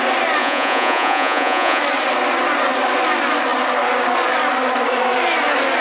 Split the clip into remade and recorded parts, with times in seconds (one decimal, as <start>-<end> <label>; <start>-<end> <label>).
0.0-0.4 recorded; 0.4-1.8 remade; 1.8-5.8 recorded